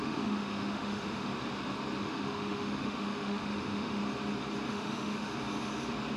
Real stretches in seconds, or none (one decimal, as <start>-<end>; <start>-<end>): 1.3-2.0; 4.0-4.7; 5.3-6.2